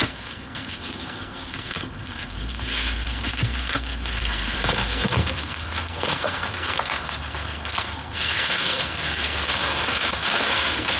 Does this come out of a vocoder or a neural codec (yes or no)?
yes